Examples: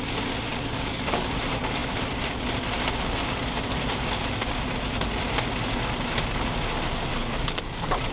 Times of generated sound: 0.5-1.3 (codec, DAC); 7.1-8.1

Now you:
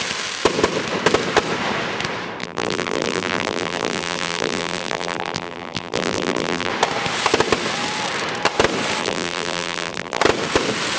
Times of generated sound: 2.4-6.7 (vocoder, BigVGAN v2); 9.0-10.2

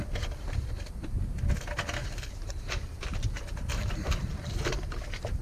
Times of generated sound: 2.0-5.4 (vocoder, BigVGAN v2)

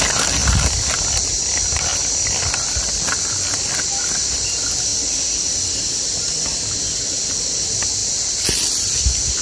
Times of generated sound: none

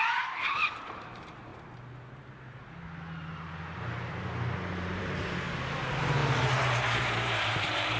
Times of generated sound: 0.0-1.5 (vocoder, BigVGAN v2); 4.7-8.0